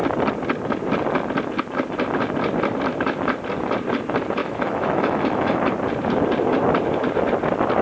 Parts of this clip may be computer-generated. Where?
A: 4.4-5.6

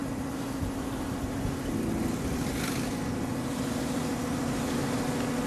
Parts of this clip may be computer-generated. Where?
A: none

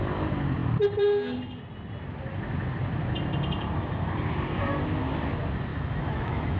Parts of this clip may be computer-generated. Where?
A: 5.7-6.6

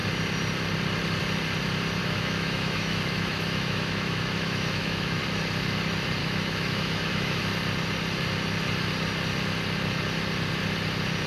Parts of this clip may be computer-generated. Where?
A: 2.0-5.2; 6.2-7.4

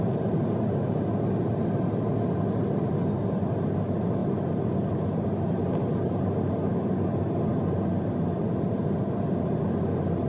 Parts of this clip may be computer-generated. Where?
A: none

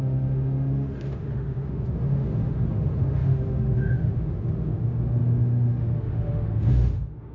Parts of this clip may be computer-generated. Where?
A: 0.0-7.3